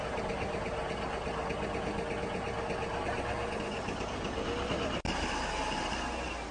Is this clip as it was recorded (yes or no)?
yes